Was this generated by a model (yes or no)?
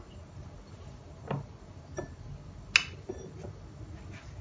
no